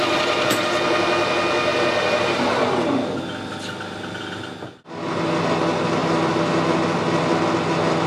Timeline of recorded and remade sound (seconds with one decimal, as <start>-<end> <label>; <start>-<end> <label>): 0.0-8.1 recorded